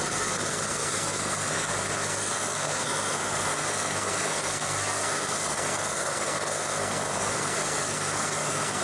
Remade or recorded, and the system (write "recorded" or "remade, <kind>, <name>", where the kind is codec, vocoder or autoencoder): remade, codec, SNAC